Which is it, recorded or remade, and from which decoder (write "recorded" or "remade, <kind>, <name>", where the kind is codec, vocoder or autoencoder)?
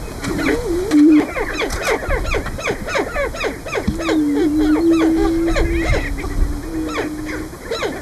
recorded